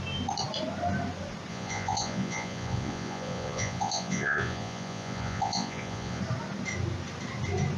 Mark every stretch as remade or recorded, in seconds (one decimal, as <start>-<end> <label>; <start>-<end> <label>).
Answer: 0.0-1.5 recorded; 1.5-6.2 remade; 6.2-7.8 recorded